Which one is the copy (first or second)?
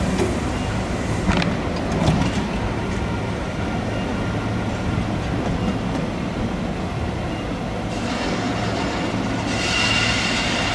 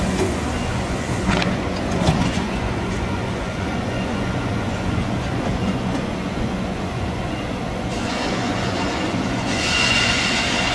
second